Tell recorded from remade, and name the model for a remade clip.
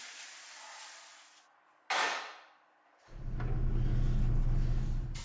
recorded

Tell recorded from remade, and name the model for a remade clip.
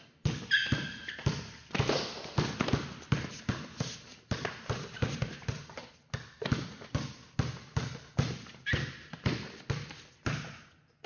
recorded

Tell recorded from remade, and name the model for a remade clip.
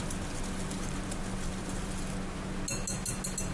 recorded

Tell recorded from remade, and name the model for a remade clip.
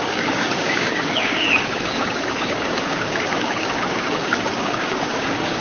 remade, codec, DAC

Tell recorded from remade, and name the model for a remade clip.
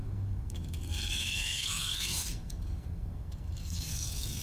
remade, codec, SNAC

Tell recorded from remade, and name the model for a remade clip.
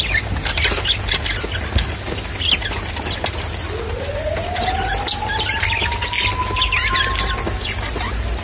recorded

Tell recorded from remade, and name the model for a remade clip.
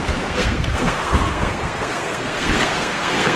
remade, codec, SNAC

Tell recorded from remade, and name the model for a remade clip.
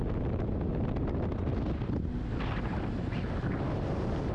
recorded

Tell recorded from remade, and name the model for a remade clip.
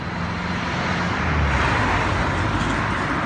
recorded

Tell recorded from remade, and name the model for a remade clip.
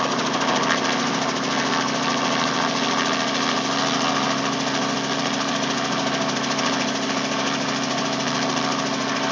recorded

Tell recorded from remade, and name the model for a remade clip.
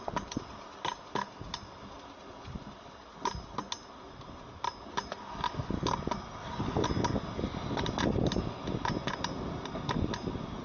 recorded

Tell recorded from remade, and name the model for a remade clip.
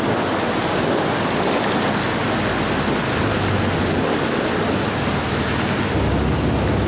recorded